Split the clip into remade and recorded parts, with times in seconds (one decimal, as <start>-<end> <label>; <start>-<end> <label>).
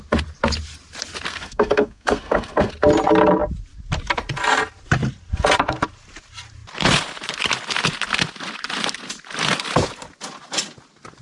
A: 0.0-1.3 recorded; 1.3-2.7 remade; 2.7-11.2 recorded